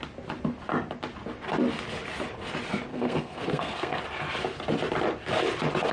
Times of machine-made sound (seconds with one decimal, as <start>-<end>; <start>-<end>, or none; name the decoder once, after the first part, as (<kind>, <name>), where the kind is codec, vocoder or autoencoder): 2.9-4.0 (codec, SNAC)